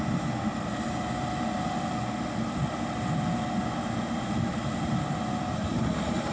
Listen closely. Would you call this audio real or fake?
real